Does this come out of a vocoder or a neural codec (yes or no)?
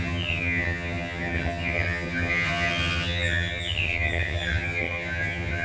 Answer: yes